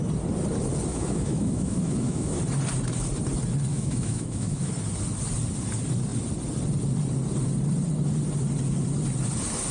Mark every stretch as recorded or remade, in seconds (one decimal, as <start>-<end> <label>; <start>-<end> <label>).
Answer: 0.0-0.9 recorded; 0.9-2.4 remade; 2.4-3.7 recorded; 3.7-4.7 remade; 4.7-9.7 recorded